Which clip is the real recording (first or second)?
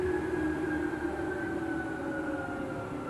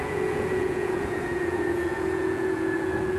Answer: first